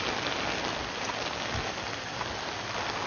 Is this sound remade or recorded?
recorded